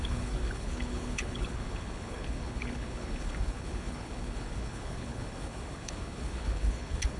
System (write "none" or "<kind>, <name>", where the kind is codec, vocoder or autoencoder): codec, HILCodec